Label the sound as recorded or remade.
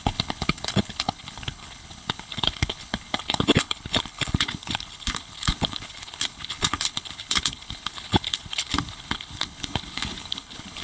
remade